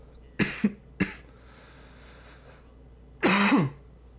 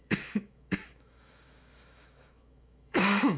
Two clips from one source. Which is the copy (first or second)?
second